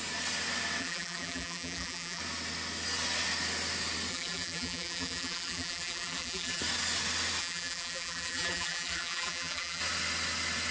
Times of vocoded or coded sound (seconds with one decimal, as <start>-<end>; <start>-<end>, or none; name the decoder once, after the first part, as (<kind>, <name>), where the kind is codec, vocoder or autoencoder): 0.8-2.2 (vocoder, BigVGAN v2); 4.1-6.6; 7.4-9.8